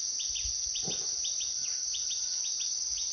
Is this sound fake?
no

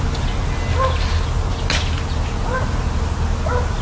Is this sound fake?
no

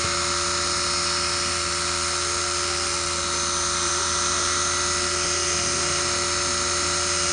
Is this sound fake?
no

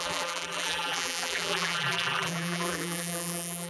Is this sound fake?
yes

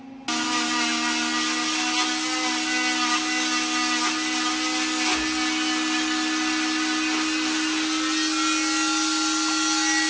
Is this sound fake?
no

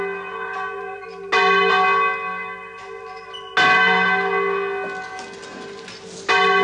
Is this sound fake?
no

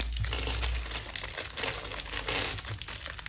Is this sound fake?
no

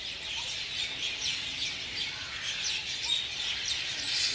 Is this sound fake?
no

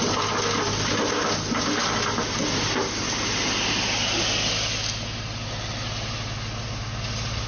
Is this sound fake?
no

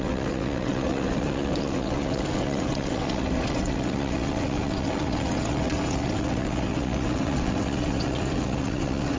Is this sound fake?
yes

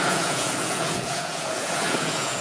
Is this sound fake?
yes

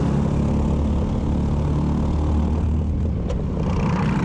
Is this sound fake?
no